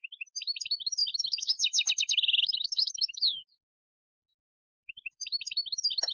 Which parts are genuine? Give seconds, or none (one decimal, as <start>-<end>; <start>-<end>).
0.0-0.6